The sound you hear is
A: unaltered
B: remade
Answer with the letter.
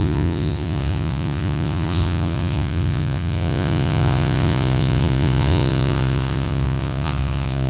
B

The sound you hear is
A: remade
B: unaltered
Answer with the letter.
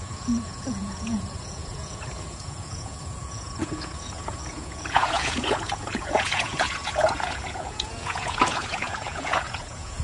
A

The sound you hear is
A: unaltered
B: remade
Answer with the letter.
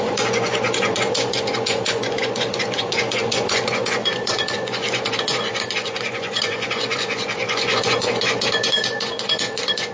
B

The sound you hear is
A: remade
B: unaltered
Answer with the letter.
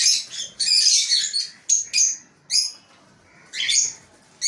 B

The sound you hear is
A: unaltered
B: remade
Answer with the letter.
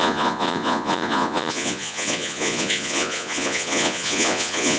B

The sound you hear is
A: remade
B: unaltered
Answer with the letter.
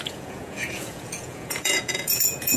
A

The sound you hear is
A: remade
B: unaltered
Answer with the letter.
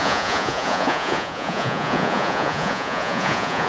A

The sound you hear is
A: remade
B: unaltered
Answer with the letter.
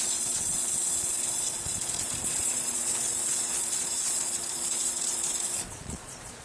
A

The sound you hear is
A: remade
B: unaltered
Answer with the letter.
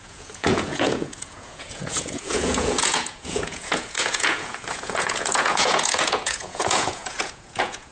A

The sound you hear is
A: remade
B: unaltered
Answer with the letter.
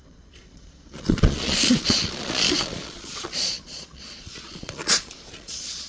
A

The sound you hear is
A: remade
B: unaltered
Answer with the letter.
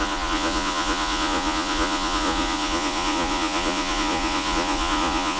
A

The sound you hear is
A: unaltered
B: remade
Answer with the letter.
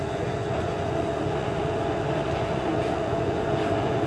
B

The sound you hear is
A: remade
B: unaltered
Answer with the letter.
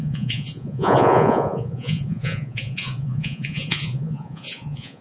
A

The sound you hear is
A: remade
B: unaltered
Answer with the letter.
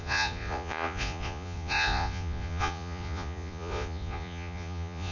A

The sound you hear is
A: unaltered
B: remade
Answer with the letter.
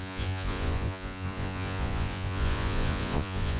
B